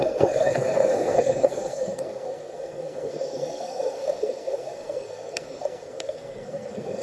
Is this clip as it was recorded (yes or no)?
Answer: no